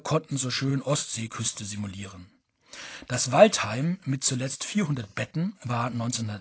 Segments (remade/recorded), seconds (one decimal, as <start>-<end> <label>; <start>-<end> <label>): 0.0-6.4 recorded

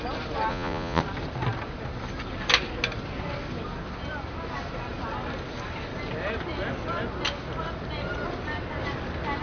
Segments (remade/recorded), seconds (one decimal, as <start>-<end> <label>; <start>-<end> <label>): 0.0-0.5 recorded; 0.5-1.0 remade; 1.0-9.4 recorded